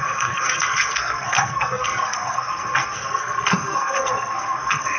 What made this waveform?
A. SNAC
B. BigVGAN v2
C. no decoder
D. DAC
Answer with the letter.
A